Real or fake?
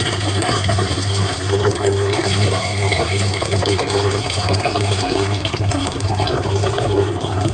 fake